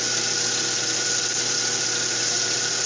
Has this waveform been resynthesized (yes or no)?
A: no